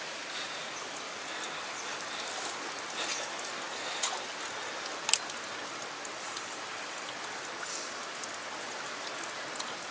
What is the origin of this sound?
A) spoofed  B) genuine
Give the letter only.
B